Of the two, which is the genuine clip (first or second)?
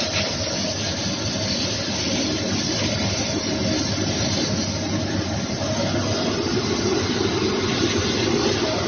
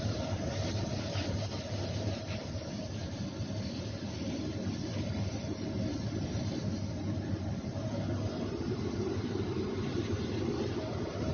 first